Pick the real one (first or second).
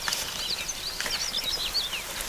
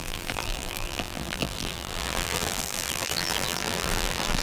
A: first